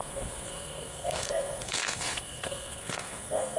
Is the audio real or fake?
fake